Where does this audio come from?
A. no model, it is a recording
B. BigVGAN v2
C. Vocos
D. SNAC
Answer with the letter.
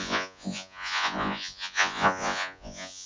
C